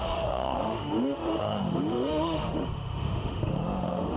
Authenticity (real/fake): fake